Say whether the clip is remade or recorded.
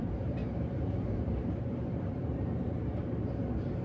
remade